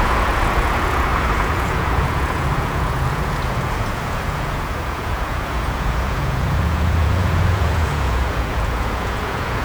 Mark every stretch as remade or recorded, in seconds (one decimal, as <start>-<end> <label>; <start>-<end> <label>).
0.0-9.6 remade